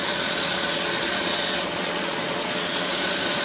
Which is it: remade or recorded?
remade